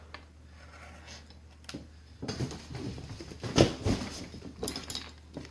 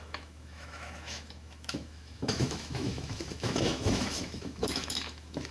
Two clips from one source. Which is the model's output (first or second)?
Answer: second